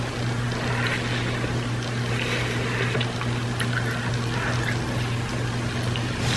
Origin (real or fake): real